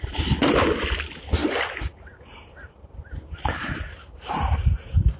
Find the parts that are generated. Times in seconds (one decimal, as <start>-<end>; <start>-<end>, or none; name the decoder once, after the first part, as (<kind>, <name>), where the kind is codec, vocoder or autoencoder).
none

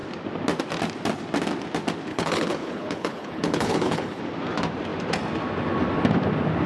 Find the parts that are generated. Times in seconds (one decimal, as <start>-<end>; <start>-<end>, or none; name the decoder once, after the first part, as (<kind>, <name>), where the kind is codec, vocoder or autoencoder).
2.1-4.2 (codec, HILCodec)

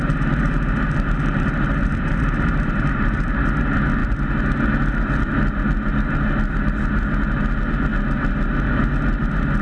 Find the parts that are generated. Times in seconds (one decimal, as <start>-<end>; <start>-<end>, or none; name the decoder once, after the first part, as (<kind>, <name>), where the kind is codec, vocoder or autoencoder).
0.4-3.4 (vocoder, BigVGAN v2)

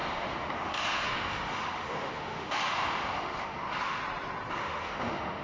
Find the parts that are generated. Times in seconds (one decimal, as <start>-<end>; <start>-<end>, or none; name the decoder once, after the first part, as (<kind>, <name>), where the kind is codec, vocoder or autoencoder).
0.0-4.0 (autoencoder, DAC-VAE); 4.5-5.4